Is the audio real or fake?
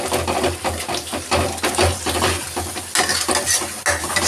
real